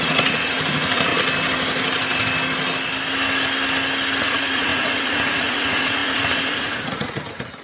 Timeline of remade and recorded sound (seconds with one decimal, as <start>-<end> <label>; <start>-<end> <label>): 0.0-1.1 remade; 1.1-4.2 recorded; 4.2-7.6 remade